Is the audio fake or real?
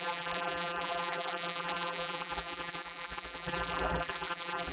fake